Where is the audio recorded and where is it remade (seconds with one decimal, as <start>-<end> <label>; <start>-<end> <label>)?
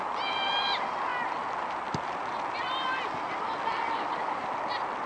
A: 0.0-5.1 recorded